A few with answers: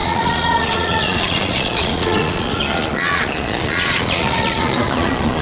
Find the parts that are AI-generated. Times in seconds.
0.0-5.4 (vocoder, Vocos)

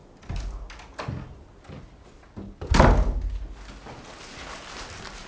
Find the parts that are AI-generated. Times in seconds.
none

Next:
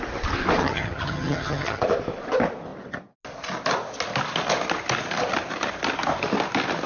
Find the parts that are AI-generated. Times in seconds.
0.6-1.8 (vocoder, HiFi-GAN)

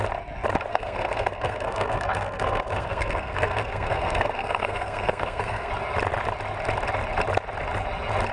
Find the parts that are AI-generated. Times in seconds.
0.7-5.7 (codec, SNAC)

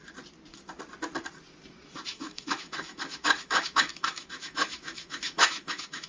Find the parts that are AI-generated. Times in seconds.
2.1-6.1 (autoencoder, DAC-VAE)

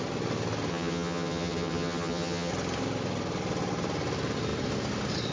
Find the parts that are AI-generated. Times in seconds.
0.7-2.5 (vocoder, HiFi-GAN)